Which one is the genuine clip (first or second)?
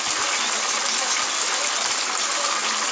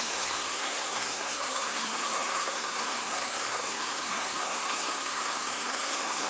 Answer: first